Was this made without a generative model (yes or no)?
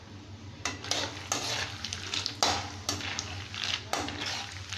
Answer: yes